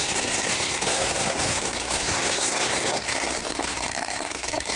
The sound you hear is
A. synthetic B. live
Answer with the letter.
A